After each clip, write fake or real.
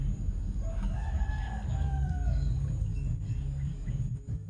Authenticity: fake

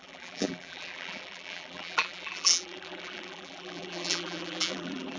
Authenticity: fake